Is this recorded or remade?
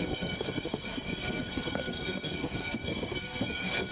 remade